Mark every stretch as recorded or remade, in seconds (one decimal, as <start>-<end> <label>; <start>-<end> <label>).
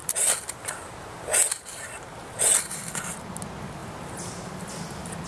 0.0-2.9 remade; 2.9-3.8 recorded; 3.8-4.5 remade; 4.5-5.3 recorded